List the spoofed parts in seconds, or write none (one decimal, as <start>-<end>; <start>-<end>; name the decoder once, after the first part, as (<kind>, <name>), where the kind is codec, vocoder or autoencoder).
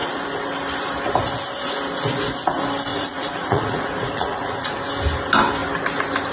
2.9-4.8 (vocoder, Vocos)